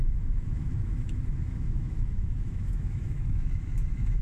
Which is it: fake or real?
fake